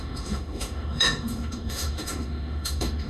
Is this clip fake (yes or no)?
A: yes